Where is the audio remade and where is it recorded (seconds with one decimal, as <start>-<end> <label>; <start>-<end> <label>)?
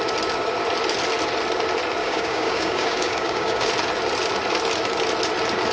0.0-2.0 recorded; 2.0-3.7 remade; 3.7-5.7 recorded